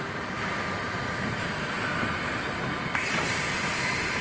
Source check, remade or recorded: remade